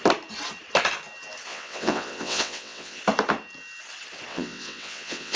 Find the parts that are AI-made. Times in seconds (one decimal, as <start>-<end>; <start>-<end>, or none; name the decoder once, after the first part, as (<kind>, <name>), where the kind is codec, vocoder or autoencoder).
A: 1.5-3.0 (vocoder, WaveNeXt); 4.3-5.4